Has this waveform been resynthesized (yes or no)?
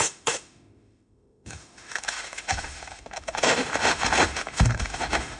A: yes